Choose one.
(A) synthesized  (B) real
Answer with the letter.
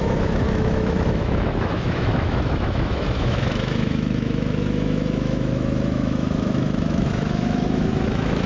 A